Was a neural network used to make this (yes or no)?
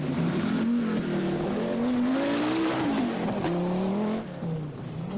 no